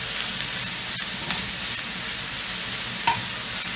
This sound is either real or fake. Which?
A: real